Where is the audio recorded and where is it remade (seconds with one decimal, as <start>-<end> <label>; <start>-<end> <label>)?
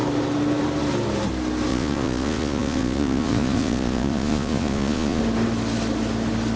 0.0-1.7 recorded; 1.7-5.2 remade; 5.2-6.6 recorded